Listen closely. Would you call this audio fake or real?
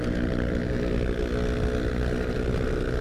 real